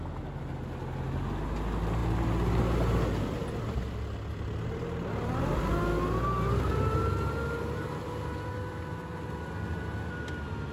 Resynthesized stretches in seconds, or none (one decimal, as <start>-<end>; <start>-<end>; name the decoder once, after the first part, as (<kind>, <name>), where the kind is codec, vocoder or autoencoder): none